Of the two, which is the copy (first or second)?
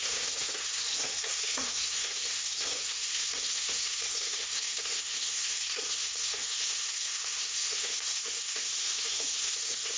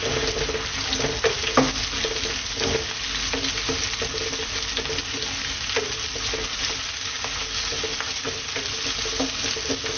first